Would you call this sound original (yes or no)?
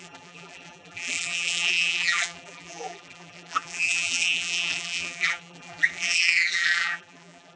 no